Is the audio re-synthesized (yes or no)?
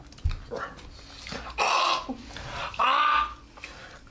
no